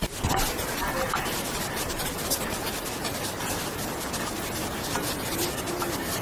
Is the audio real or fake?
real